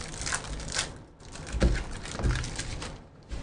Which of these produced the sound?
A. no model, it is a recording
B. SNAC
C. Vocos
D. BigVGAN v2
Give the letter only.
A